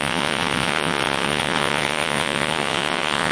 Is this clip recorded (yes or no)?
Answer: no